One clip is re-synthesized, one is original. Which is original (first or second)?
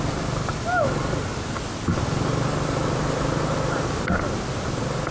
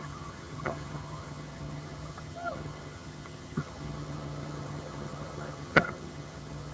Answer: first